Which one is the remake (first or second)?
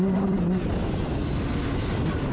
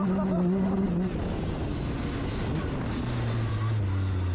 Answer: first